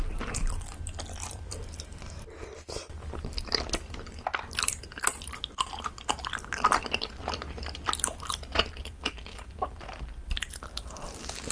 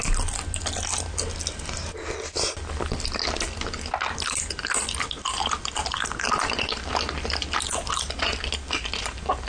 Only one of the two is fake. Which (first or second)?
first